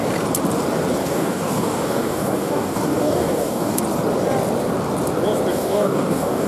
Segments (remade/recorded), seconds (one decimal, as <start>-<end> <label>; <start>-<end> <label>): 0.0-1.0 recorded; 1.0-3.8 remade; 3.8-5.5 recorded; 5.5-6.5 remade